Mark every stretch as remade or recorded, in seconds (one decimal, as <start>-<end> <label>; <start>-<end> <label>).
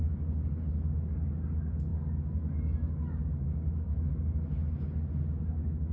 0.0-5.9 recorded